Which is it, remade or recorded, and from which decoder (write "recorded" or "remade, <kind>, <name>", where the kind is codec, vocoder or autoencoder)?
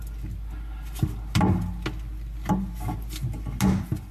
recorded